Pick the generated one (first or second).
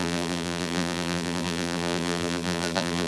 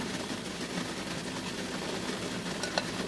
first